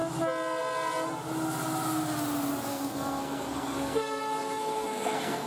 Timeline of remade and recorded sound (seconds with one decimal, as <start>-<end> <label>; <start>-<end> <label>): 0.0-2.7 recorded; 2.7-5.5 remade